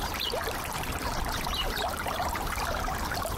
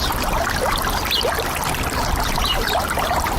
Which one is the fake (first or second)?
first